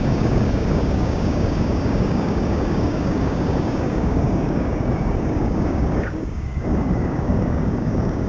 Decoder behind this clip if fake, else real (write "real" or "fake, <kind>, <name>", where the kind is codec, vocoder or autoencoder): fake, codec, DAC